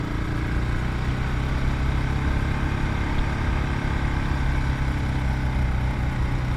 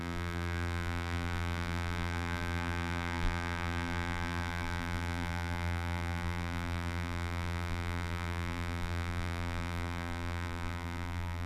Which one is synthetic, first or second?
second